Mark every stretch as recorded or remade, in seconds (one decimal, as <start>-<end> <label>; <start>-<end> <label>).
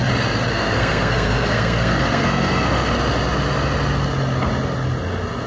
0.0-0.5 recorded; 0.5-2.9 remade; 2.9-5.5 recorded